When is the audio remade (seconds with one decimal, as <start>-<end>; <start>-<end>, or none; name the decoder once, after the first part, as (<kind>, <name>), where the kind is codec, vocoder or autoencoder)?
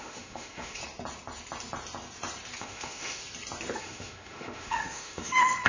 0.0-0.8 (autoencoder, DAC-VAE); 2.6-3.2; 3.8-5.7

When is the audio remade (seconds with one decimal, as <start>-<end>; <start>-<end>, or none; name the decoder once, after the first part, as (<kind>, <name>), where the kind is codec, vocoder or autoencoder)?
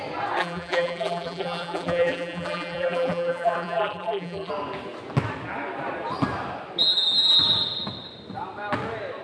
0.4-4.5 (vocoder, BigVGAN v2)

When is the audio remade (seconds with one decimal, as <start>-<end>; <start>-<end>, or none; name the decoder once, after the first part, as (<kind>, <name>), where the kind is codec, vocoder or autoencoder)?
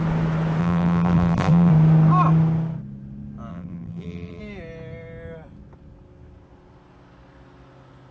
0.6-1.7 (vocoder, BigVGAN v2); 3.5-4.4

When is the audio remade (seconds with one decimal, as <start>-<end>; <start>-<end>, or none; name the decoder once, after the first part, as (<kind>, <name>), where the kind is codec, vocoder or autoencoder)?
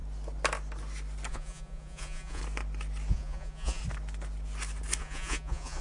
1.3-2.4 (vocoder, Vocos); 3.1-3.8; 5.0-5.8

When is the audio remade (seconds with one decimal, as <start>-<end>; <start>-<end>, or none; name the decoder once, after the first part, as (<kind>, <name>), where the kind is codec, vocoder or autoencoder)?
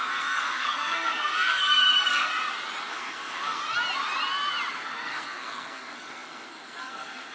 0.0-2.3 (codec, SNAC); 2.9-3.6; 4.7-7.3